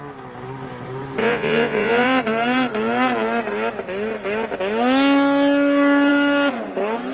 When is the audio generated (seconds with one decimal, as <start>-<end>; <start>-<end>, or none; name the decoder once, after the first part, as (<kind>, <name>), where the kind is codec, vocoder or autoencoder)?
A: 1.2-2.2 (vocoder, Vocos)